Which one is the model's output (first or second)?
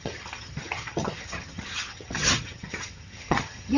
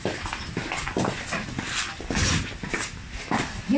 first